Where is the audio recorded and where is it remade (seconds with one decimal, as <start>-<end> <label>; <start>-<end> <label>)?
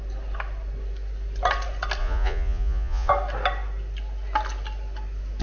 0.0-2.0 recorded; 2.0-3.1 remade; 3.1-5.4 recorded